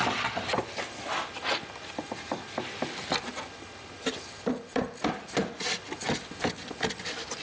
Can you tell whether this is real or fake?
real